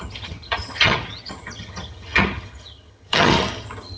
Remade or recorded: remade